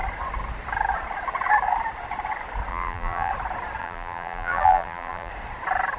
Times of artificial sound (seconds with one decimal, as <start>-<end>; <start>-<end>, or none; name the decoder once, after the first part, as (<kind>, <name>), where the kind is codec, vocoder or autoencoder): 2.7-3.3 (vocoder, BigVGAN v2); 3.8-5.3